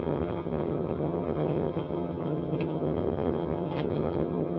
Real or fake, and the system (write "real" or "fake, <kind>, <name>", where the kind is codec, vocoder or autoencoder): fake, vocoder, HiFi-GAN